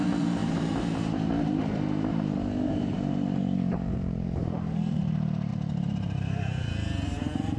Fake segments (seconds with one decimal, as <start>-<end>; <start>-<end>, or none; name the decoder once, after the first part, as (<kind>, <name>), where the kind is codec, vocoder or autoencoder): 0.0-7.6 (vocoder, BigVGAN v2)